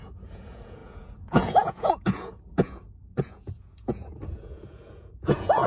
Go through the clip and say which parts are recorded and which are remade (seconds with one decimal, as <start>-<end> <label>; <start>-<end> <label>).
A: 0.0-5.7 remade

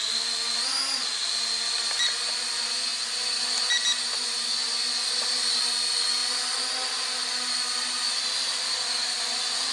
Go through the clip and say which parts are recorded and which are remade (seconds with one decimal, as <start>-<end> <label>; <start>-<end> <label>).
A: 0.0-9.7 recorded

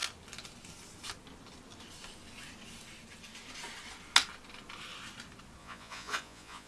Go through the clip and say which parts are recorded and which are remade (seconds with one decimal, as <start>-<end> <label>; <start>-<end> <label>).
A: 0.0-5.6 recorded; 5.6-6.7 remade